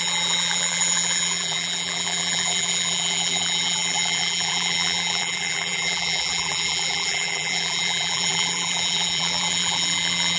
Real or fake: fake